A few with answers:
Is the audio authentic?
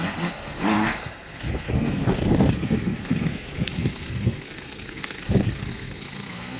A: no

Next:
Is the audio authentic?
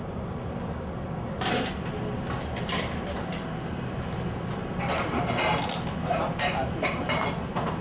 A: yes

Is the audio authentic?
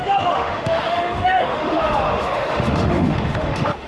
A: no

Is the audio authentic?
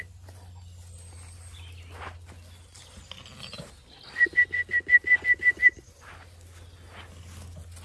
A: yes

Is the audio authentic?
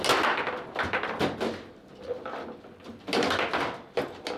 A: yes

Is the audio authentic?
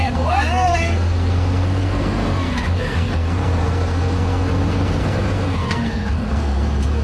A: no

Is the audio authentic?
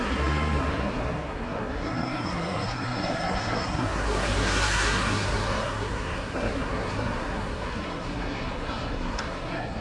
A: no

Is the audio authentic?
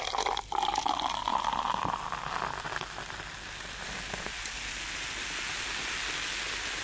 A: yes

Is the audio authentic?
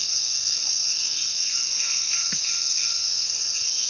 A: no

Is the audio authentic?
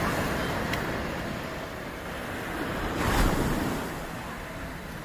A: yes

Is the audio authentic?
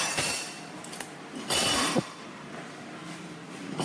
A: yes